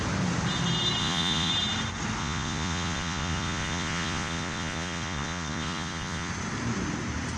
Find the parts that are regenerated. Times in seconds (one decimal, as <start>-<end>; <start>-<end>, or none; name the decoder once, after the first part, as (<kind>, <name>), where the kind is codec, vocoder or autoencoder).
1.0-1.5 (vocoder, Vocos); 2.2-6.3